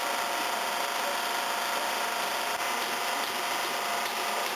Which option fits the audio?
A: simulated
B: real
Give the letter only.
B